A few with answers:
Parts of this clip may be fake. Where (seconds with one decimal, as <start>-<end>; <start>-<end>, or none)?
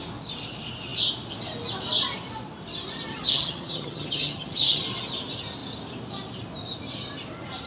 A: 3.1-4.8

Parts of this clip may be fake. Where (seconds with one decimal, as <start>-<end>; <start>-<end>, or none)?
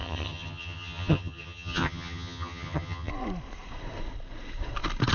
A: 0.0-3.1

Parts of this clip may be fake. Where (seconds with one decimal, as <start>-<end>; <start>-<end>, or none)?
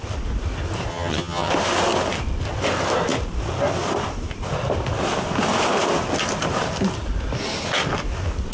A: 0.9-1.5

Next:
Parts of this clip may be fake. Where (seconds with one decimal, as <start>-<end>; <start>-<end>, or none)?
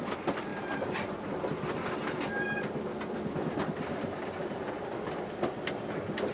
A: none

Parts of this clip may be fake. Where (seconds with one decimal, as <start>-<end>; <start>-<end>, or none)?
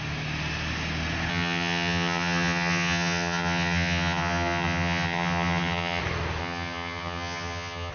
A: 1.3-6.0; 6.4-7.9